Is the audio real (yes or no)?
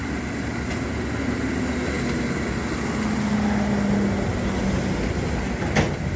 yes